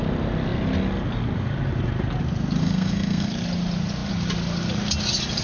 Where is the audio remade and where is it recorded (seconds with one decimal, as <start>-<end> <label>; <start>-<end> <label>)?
0.0-2.6 recorded; 2.6-3.3 remade; 3.3-5.4 recorded